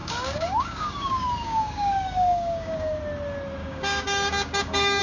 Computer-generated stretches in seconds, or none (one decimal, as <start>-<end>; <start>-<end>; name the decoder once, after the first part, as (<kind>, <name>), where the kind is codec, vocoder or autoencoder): 0.0-3.0 (codec, DAC); 3.6-5.0